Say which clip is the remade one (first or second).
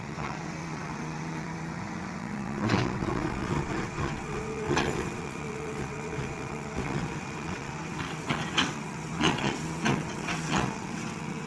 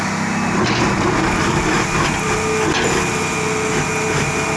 first